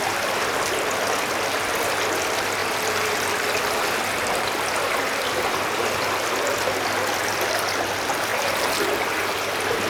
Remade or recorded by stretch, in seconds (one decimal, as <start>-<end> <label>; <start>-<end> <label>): 0.0-9.9 recorded